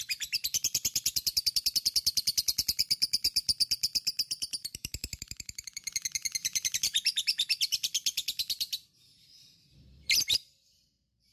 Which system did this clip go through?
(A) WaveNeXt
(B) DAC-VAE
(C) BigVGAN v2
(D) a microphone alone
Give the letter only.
C